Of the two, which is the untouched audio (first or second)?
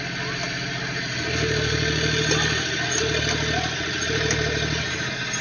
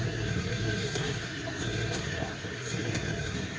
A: first